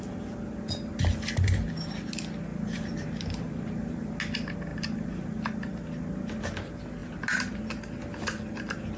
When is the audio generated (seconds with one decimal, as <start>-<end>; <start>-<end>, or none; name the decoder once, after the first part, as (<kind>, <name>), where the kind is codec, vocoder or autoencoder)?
2.5-4.2 (vocoder, BigVGAN v2); 4.7-5.3